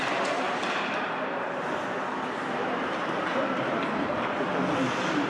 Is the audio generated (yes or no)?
no